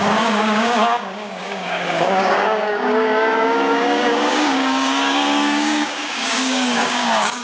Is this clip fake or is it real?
fake